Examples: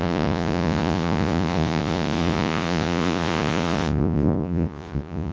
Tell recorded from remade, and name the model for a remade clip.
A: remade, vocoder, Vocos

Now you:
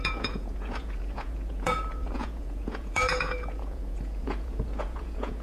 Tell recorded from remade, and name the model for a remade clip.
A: remade, vocoder, Vocos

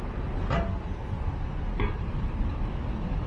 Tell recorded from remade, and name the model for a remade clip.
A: recorded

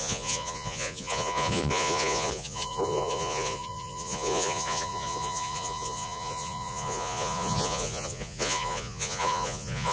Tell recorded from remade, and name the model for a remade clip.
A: remade, vocoder, Vocos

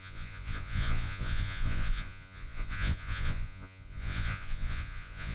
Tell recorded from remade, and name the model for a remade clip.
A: remade, vocoder, Vocos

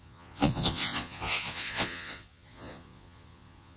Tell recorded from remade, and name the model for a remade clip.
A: remade, vocoder, Vocos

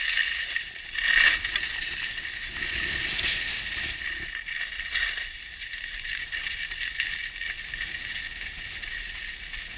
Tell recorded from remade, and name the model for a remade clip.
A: recorded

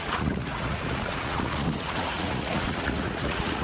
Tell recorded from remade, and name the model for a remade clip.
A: remade, vocoder, Vocos